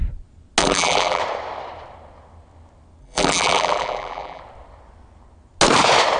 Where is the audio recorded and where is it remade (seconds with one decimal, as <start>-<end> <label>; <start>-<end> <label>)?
0.0-0.6 recorded; 0.6-1.2 remade; 1.2-3.0 recorded; 3.0-4.4 remade; 4.4-6.2 recorded